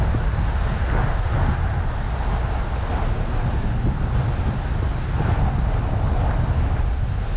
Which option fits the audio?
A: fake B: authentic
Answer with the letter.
B